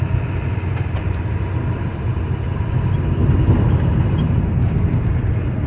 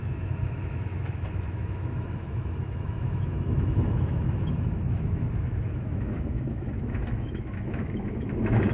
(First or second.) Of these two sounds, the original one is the first